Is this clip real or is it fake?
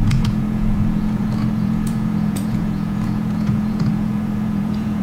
fake